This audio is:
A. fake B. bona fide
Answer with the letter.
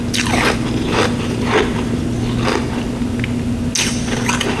B